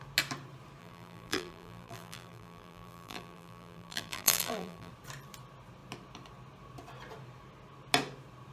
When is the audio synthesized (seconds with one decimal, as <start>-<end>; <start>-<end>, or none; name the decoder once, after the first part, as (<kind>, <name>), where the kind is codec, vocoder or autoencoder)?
0.8-4.9 (vocoder, BigVGAN v2)